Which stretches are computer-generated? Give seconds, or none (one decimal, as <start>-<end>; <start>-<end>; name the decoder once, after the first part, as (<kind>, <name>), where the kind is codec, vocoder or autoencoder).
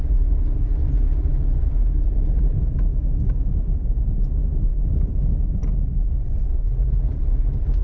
2.9-4.0 (codec, DAC)